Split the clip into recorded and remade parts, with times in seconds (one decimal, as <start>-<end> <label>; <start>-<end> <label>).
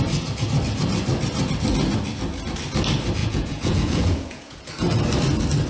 0.0-3.2 recorded; 3.2-4.7 remade; 4.7-5.7 recorded